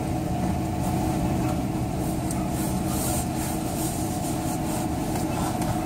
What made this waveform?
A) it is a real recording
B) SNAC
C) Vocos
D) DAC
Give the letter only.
A